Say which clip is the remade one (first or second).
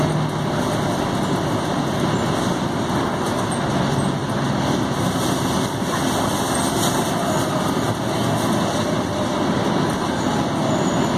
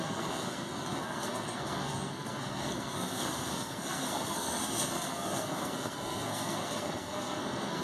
second